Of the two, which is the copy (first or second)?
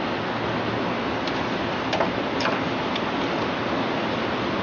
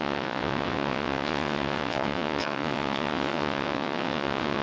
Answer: second